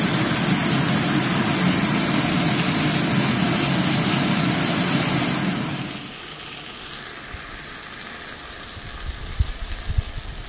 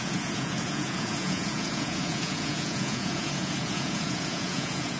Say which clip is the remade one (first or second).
second